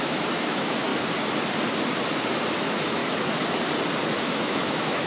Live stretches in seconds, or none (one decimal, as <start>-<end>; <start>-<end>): 0.9-2.6; 3.0-4.2